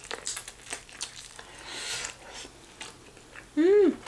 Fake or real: real